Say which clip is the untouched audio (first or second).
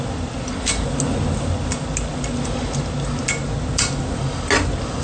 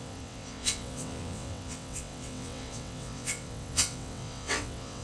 first